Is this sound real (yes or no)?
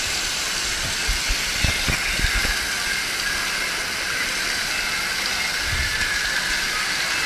yes